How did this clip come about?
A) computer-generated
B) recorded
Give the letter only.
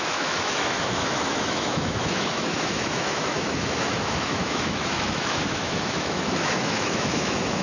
A